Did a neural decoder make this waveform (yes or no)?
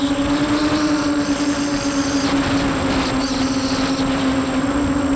no